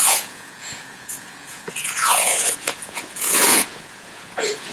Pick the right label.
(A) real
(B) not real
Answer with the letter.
B